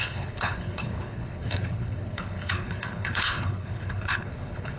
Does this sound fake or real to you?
fake